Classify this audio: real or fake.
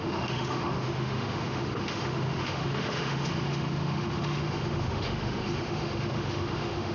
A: fake